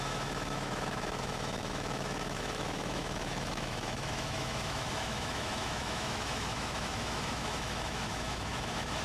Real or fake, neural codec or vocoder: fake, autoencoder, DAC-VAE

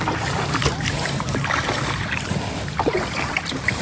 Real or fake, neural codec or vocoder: real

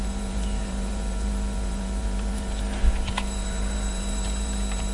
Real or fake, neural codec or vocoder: fake, vocoder, BigVGAN v2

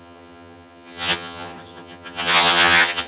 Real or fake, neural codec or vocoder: fake, vocoder, HiFi-GAN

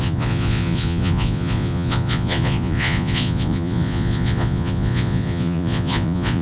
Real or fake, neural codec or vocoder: fake, vocoder, Vocos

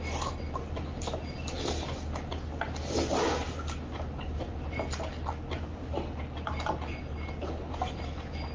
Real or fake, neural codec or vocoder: real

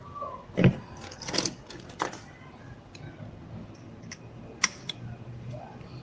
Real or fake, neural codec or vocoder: real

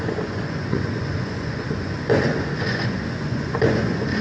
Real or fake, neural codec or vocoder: fake, vocoder, Vocos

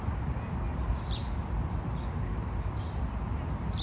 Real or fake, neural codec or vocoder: real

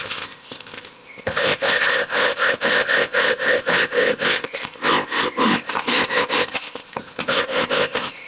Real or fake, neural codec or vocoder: fake, codec, ZipCodec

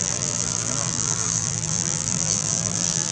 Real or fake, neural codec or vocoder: fake, vocoder, BigVGAN v2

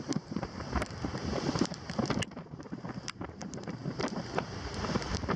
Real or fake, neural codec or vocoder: fake, vocoder, BigVGAN v2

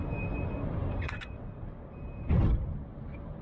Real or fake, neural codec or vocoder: fake, vocoder, BigVGAN v2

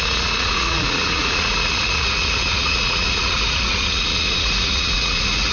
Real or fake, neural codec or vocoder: fake, vocoder, Vocos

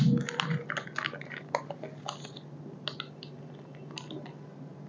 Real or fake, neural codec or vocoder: real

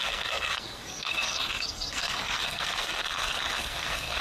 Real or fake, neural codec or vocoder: fake, codec, SNAC